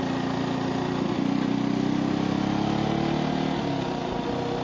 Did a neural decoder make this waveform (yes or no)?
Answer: no